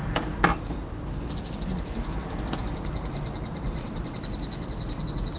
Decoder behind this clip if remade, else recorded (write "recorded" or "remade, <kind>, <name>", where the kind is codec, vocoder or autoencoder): recorded